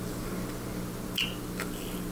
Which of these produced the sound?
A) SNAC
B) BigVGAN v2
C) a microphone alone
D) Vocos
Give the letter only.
C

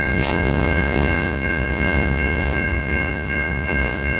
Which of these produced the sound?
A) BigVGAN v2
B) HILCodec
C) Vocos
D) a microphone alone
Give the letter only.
C